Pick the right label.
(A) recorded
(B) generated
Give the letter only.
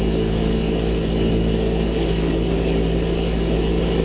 B